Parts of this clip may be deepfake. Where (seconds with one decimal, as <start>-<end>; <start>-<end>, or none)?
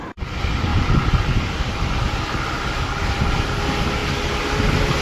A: none